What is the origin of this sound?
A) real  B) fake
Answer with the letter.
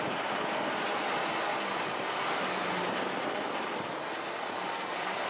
A